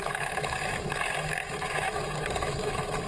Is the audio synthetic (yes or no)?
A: yes